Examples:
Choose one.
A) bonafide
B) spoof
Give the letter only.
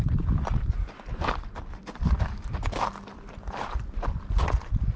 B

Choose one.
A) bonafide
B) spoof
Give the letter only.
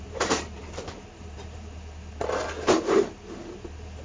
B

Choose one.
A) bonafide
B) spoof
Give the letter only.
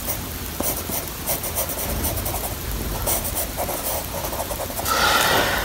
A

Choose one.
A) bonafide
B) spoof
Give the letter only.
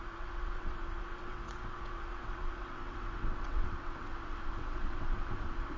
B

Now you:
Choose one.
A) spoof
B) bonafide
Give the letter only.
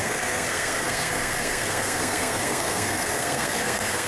A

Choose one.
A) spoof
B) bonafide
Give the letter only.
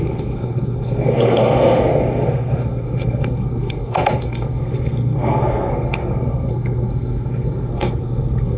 A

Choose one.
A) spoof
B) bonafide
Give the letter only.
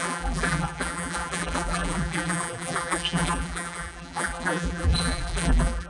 A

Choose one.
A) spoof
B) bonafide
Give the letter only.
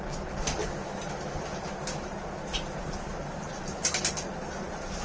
B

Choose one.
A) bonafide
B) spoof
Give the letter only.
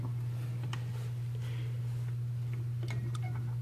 A